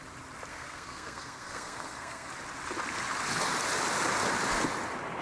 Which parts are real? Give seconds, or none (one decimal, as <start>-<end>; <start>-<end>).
0.0-0.5; 2.3-5.2